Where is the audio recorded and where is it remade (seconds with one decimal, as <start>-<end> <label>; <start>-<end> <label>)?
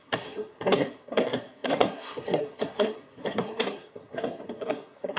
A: 0.0-5.2 remade